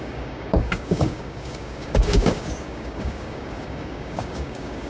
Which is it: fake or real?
fake